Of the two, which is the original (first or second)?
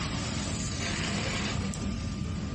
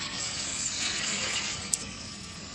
first